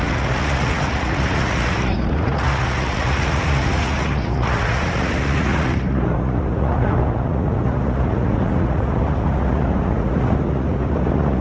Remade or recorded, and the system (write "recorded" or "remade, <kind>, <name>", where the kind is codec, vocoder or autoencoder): remade, vocoder, Vocos